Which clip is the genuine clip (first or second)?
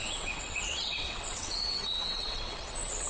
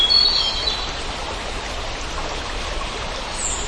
second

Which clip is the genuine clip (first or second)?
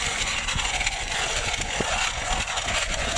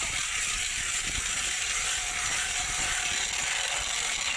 second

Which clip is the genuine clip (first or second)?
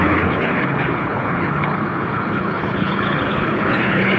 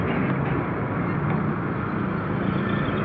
second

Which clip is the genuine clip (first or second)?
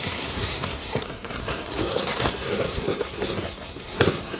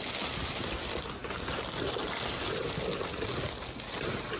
second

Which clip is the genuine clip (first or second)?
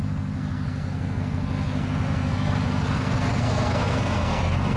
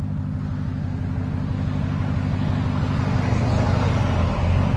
second